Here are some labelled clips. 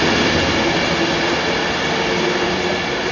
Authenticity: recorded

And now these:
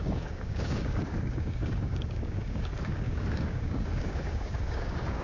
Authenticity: remade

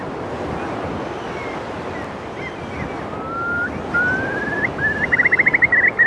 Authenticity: recorded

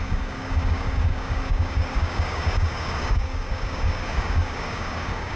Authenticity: remade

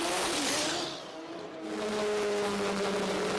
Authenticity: recorded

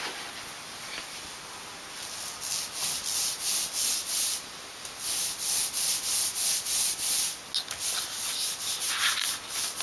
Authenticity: recorded